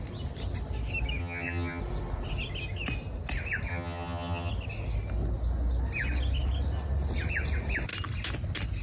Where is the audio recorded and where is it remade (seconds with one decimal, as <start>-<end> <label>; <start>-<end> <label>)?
0.0-1.2 recorded; 1.2-1.8 remade; 1.8-3.7 recorded; 3.7-4.5 remade; 4.5-8.8 recorded